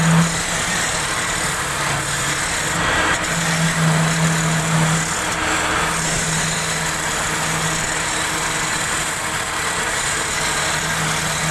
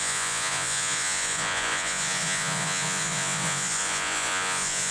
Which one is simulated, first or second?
second